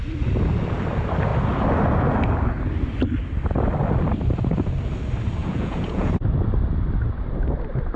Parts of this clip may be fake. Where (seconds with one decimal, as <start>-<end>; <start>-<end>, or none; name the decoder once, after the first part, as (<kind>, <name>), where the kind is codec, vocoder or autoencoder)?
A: 5.4-6.1 (vocoder, Vocos)